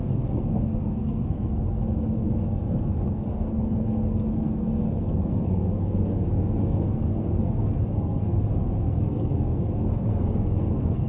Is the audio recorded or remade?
remade